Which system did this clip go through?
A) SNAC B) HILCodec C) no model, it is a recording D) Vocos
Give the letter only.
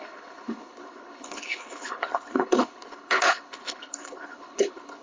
B